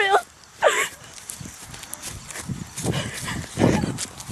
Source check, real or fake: real